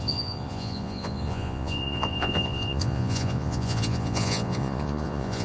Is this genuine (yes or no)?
no